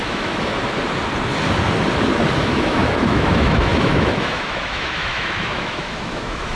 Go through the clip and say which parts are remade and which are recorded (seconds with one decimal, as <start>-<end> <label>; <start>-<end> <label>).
0.0-0.5 remade; 0.5-2.3 recorded; 2.3-6.6 remade